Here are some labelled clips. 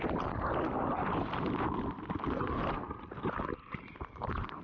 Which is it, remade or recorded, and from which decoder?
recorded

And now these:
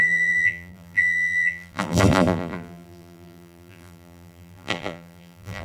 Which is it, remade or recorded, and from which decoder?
remade, vocoder, BigVGAN v2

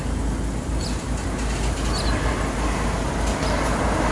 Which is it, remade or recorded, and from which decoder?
recorded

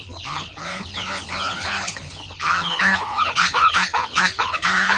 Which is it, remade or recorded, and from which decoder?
remade, codec, HILCodec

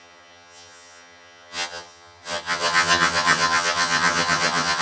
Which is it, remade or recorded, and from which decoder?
remade, vocoder, HiFi-GAN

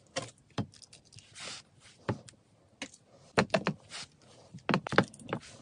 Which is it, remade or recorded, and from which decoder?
recorded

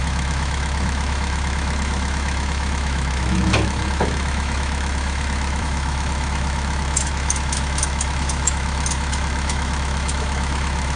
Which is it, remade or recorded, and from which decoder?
remade, autoencoder, DAC-VAE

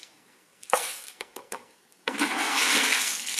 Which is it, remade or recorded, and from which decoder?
remade, codec, SNAC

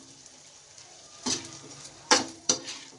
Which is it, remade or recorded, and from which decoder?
remade, vocoder, BigVGAN v2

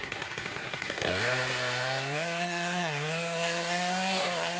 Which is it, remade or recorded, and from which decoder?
remade, codec, SNAC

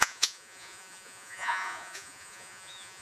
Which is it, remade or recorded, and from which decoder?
remade, vocoder, Vocos